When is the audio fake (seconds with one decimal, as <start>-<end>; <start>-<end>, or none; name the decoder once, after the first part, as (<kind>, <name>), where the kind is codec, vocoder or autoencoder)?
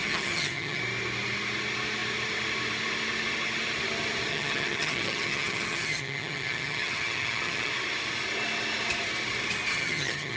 0.0-0.8 (vocoder, HiFi-GAN); 4.3-7.7; 9.7-10.4